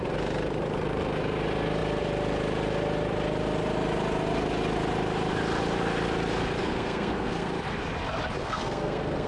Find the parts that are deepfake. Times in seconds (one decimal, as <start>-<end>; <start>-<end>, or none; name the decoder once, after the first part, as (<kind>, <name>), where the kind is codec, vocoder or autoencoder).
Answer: 6.6-7.5 (codec, SNAC); 8.4-9.3